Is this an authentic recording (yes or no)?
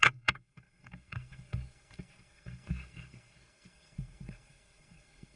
no